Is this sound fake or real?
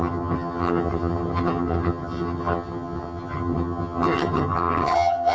fake